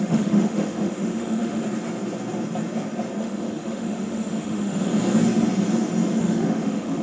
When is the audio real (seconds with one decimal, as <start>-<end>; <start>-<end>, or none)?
1.6-3.2; 4.9-6.2